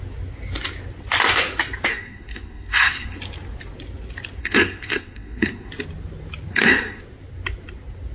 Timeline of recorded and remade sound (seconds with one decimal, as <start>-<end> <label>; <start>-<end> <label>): 0.0-1.9 recorded; 1.9-3.2 remade; 3.2-4.4 recorded; 4.4-5.7 remade; 5.7-6.5 recorded; 6.5-7.0 remade; 7.0-8.1 recorded